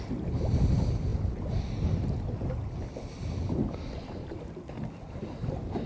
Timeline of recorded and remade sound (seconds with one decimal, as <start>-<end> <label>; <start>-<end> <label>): 0.0-5.9 recorded